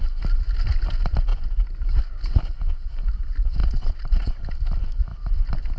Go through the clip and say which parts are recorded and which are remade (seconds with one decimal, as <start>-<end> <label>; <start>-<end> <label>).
0.0-3.6 recorded; 3.6-4.3 remade; 4.3-5.8 recorded

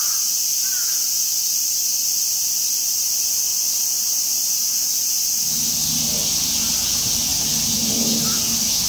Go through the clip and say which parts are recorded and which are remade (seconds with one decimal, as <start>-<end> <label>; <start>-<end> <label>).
0.0-1.9 recorded; 1.9-2.7 remade; 2.7-3.5 recorded; 3.5-6.3 remade; 6.3-7.3 recorded; 7.3-7.9 remade; 7.9-8.9 recorded

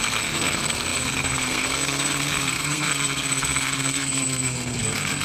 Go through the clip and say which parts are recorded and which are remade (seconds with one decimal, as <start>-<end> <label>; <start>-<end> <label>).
0.0-5.2 remade

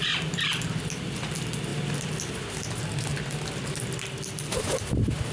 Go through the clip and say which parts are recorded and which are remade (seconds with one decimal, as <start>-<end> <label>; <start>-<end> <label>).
0.0-5.3 recorded